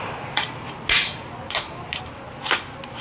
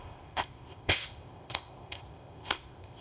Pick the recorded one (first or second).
first